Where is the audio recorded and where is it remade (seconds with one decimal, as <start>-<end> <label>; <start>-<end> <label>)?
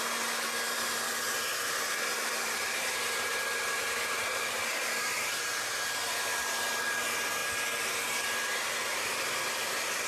0.0-2.1 recorded; 2.1-5.3 remade; 5.3-10.1 recorded